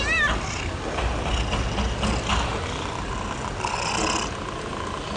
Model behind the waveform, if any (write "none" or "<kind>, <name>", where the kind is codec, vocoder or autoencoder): none